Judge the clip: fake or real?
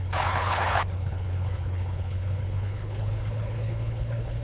fake